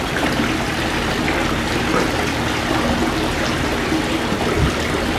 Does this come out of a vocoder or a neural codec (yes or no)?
no